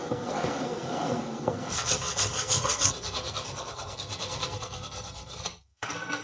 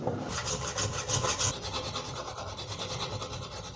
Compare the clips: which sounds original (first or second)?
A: second